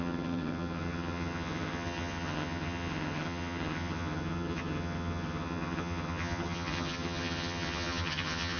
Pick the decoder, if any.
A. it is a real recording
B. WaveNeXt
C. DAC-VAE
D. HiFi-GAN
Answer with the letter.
D